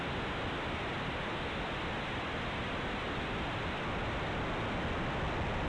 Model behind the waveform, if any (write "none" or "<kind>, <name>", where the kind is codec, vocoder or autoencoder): none